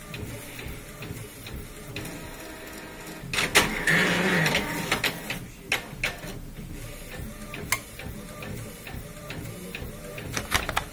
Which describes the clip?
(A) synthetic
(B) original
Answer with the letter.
B